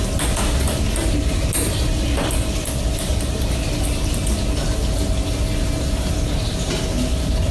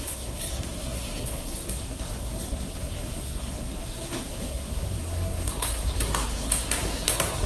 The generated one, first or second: second